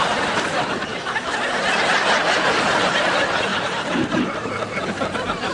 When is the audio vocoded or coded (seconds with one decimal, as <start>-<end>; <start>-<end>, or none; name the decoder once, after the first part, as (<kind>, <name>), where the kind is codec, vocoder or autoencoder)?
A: 3.5-4.7 (vocoder, BigVGAN v2)